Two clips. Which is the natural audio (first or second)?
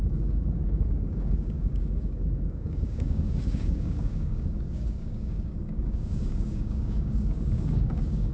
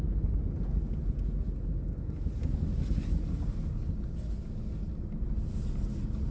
second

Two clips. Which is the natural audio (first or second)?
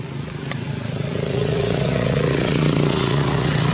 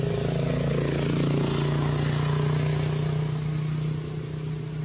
second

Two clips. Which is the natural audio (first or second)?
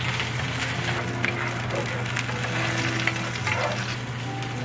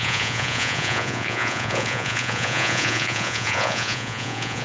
first